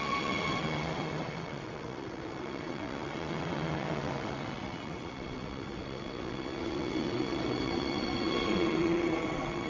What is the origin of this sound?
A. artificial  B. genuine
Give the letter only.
A